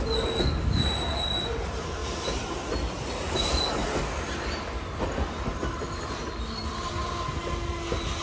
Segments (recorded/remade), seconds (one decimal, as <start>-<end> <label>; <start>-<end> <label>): 0.0-8.2 recorded